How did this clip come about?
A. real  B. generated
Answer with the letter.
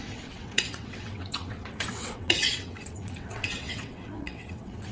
B